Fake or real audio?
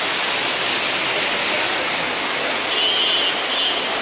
real